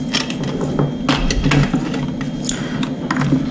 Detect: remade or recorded recorded